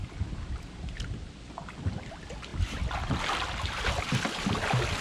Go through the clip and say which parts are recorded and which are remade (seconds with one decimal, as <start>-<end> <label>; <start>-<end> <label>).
0.0-5.0 recorded

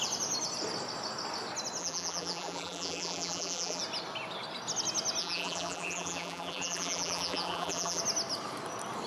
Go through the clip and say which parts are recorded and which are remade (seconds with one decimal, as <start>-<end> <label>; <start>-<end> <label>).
0.0-1.8 recorded; 1.8-3.8 remade; 3.8-5.2 recorded; 5.2-8.0 remade; 8.0-9.1 recorded